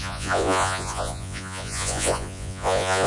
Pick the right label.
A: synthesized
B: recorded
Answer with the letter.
A